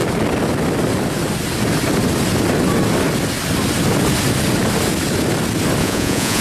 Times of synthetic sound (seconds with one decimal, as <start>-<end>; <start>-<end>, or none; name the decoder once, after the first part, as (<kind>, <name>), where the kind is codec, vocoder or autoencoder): 5.8-6.4 (vocoder, Vocos)